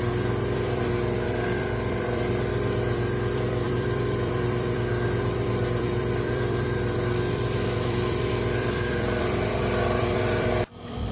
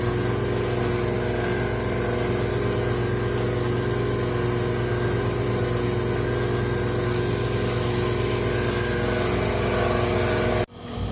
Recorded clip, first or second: second